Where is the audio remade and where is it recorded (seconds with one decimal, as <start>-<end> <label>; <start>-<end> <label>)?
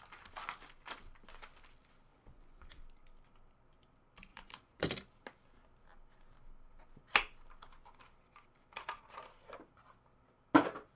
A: 0.0-2.1 recorded; 2.1-2.8 remade; 2.8-4.3 recorded; 4.3-4.9 remade; 4.9-11.0 recorded